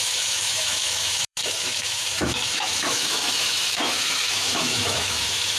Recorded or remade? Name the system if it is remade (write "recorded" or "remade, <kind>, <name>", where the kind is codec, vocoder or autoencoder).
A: remade, autoencoder, DAC-VAE